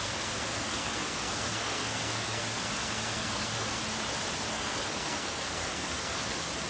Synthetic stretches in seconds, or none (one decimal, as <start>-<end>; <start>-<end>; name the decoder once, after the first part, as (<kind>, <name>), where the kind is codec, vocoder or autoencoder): 0.0-3.8 (codec, SNAC); 4.5-6.7